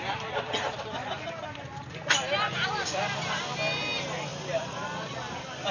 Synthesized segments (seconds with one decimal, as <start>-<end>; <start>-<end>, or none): none